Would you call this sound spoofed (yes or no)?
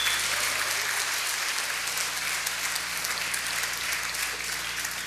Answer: no